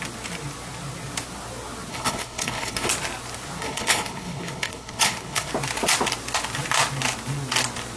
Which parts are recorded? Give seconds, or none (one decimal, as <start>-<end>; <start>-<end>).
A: 0.0-1.9; 2.9-3.6; 5.5-8.0